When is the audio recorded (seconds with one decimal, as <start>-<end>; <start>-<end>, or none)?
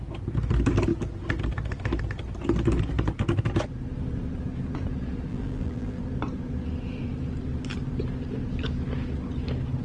0.0-5.3; 6.0-9.8